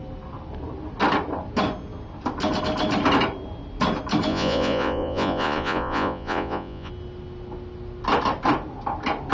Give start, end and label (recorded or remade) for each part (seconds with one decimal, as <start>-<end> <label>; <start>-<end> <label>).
0.0-4.3 recorded; 4.3-6.9 remade; 6.9-9.3 recorded